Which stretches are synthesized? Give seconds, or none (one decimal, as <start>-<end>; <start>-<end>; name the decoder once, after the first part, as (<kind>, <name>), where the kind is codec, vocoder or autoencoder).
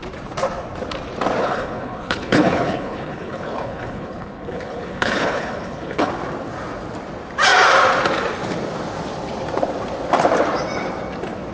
1.4-6.1 (codec, HILCodec)